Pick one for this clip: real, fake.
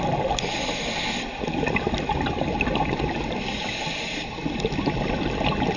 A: fake